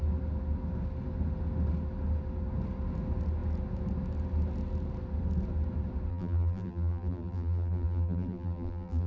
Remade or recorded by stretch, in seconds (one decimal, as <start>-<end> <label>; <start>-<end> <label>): 0.0-6.1 recorded; 6.1-9.1 remade